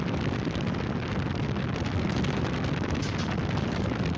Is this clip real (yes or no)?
yes